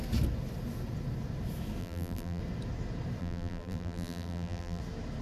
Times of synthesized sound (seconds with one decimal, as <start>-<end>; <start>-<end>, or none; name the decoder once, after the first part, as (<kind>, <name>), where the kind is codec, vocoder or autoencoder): 1.8-2.4 (vocoder, BigVGAN v2); 3.2-4.8